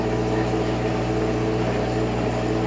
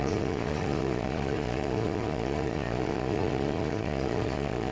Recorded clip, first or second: first